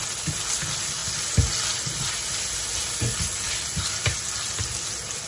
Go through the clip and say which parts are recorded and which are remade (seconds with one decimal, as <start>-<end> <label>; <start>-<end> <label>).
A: 0.0-5.3 recorded